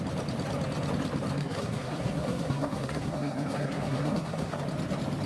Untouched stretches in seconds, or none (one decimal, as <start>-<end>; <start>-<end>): 0.0-1.4; 4.6-5.3